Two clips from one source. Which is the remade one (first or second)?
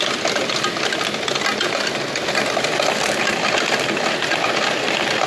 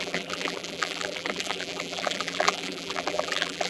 second